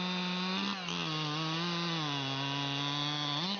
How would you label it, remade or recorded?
recorded